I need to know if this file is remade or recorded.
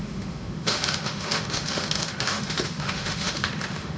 remade